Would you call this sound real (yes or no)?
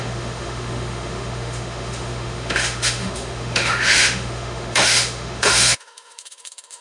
no